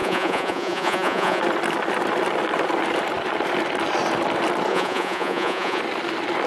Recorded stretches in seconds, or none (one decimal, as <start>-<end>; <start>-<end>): 1.4-4.7; 5.8-6.5